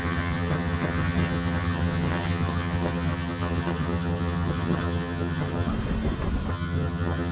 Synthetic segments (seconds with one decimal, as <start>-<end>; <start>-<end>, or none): 0.0-5.7; 6.5-7.3